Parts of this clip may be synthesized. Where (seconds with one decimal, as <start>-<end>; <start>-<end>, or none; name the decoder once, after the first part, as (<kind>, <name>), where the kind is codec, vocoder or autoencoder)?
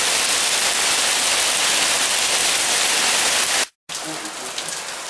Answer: 2.4-2.9 (vocoder, BigVGAN v2)